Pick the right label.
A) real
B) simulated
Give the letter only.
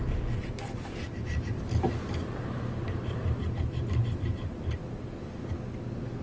A